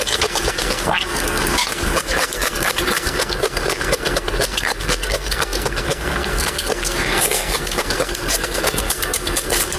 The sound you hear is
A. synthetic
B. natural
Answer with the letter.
A